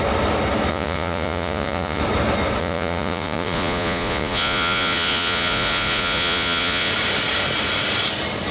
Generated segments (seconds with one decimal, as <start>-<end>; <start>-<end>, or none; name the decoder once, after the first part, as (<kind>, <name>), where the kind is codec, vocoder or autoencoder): 0.7-2.0 (vocoder, Vocos); 2.6-6.9